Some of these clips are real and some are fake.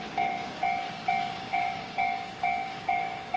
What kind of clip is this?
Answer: fake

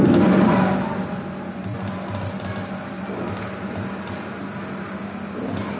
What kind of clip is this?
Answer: real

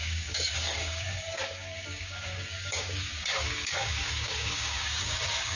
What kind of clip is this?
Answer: fake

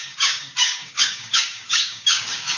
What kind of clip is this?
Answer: fake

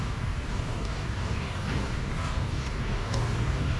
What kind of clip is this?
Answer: fake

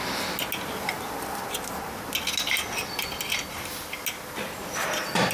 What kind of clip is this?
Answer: real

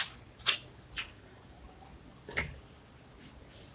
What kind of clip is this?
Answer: real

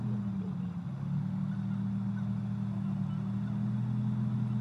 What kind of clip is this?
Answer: real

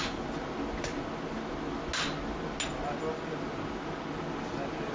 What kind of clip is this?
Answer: real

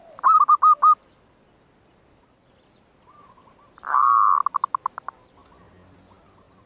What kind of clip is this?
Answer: real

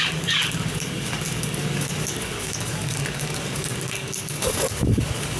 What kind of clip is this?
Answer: fake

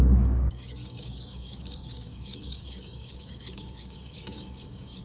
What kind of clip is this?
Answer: fake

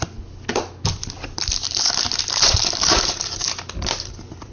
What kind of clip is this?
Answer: real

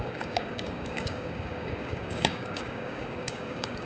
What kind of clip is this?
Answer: fake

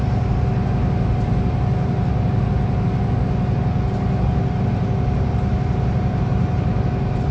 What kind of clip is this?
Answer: real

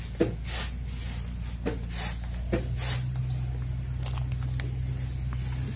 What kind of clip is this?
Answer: real